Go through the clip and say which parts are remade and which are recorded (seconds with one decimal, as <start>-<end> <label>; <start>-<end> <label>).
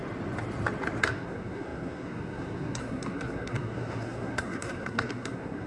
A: 0.0-1.0 recorded; 1.0-5.7 remade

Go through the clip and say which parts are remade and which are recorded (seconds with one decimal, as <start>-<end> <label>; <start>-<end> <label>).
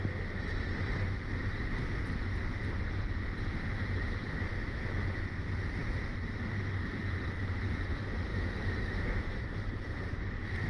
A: 0.0-8.3 recorded; 8.3-10.7 remade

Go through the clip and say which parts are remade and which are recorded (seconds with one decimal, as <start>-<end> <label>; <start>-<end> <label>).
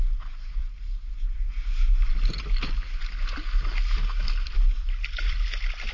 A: 0.0-5.9 recorded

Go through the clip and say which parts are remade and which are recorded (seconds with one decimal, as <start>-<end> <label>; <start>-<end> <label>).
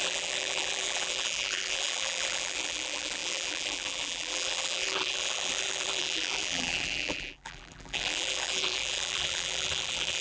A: 0.0-10.2 remade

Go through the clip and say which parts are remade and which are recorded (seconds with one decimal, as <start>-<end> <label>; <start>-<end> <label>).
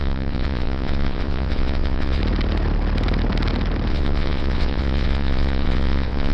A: 0.0-2.2 remade; 2.2-3.9 recorded; 3.9-6.3 remade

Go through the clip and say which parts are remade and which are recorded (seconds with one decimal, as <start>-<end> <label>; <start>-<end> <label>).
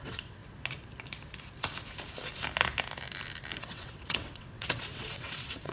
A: 0.0-0.4 remade; 0.4-3.6 recorded; 3.6-5.7 remade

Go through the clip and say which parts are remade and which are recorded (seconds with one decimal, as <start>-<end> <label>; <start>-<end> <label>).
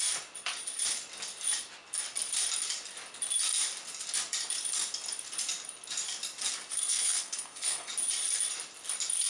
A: 0.0-6.7 recorded; 6.7-7.9 remade; 7.9-9.3 recorded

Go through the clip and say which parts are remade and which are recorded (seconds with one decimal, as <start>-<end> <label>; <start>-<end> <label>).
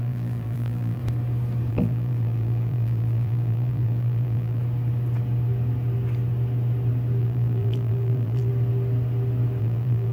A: 0.0-1.0 remade; 1.0-1.7 recorded; 1.7-4.6 remade; 4.6-7.2 recorded; 7.2-8.5 remade; 8.5-9.6 recorded; 9.6-10.1 remade